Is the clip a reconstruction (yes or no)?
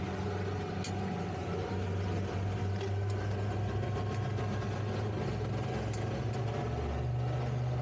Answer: no